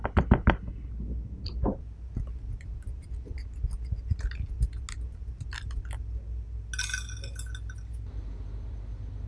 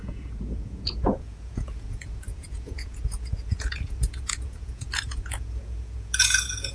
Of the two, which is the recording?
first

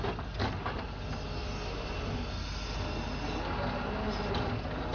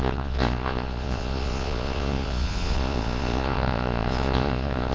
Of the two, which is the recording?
first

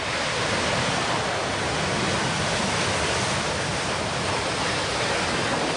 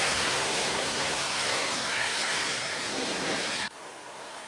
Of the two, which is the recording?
first